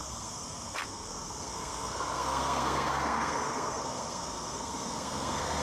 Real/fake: fake